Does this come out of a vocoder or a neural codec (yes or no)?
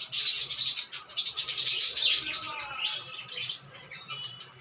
yes